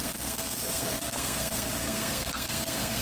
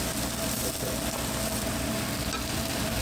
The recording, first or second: second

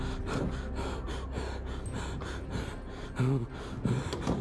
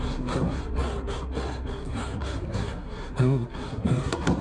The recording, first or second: first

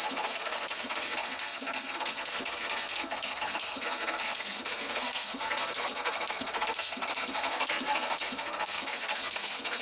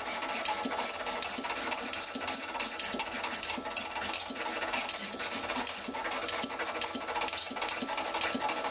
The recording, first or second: second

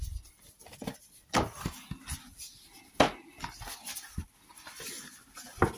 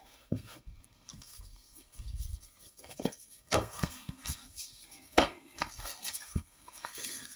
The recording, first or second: first